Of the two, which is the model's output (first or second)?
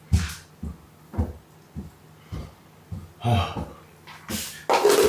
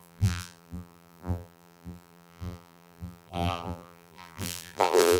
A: second